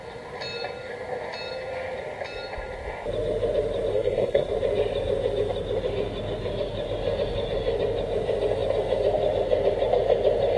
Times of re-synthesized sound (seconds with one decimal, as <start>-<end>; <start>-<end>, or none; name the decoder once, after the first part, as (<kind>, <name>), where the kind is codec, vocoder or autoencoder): 3.9-4.5 (codec, SNAC)